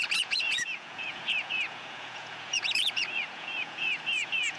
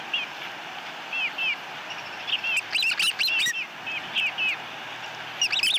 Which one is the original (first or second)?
second